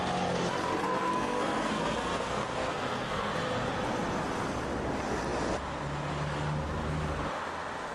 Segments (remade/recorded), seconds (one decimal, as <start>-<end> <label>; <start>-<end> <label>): 0.0-0.8 recorded; 0.8-3.3 remade; 3.3-7.9 recorded